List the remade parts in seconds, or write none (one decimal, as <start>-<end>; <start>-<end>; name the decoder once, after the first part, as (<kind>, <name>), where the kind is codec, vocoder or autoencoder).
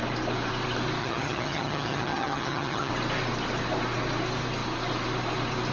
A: 1.0-2.9 (vocoder, HiFi-GAN)